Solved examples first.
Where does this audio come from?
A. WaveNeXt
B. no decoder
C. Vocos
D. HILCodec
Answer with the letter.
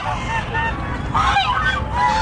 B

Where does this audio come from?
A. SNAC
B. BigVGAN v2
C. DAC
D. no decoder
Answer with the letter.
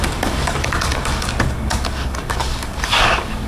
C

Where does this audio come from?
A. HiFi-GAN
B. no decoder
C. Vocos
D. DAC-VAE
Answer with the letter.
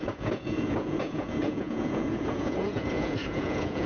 C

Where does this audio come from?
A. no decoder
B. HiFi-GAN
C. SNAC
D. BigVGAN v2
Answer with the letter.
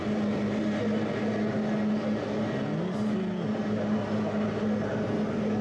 A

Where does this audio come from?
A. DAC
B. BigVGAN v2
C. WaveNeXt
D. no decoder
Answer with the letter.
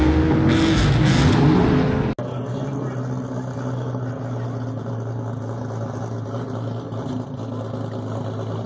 D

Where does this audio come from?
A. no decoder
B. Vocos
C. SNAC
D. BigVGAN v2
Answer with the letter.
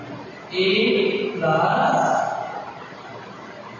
A